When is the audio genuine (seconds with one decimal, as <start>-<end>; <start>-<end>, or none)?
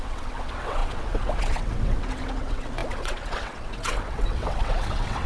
none